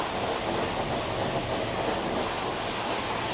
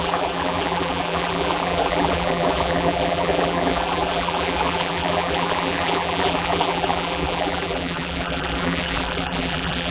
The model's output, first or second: second